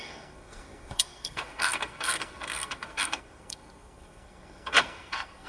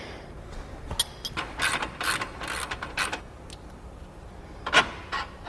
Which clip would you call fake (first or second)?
first